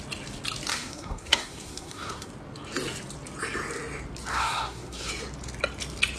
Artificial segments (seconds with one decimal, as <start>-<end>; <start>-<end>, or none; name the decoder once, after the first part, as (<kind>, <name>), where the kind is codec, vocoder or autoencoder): 0.7-2.3 (codec, SNAC); 4.3-5.1